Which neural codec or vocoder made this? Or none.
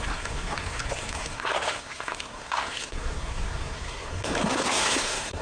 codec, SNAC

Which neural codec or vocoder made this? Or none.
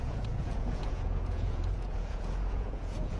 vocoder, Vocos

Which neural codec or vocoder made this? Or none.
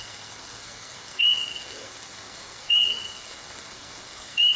codec, SNAC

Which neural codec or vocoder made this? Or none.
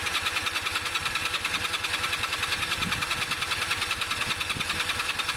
none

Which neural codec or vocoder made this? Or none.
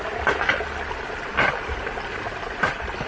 none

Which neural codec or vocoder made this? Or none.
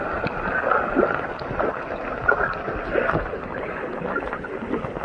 none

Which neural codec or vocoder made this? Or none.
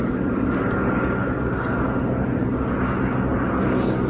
none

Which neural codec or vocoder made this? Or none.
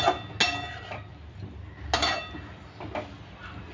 none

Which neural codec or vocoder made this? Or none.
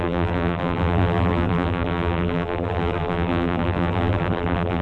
vocoder, BigVGAN v2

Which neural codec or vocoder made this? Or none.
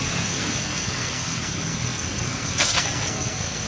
codec, SNAC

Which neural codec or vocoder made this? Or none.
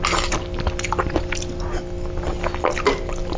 none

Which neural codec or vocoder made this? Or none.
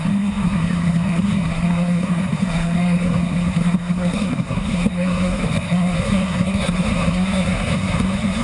codec, SNAC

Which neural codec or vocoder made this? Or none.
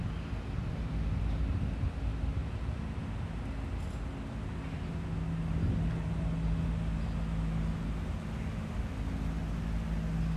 none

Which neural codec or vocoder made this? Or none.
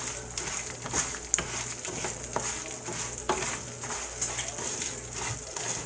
none